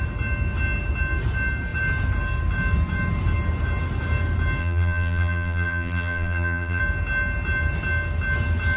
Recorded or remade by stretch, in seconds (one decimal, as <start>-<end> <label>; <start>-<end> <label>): 0.0-4.6 recorded; 4.6-6.8 remade; 6.8-8.8 recorded